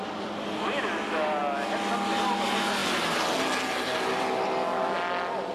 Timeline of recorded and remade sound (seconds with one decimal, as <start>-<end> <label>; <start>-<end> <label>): 0.0-5.5 recorded